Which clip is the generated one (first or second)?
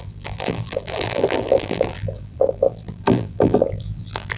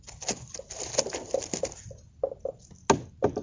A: first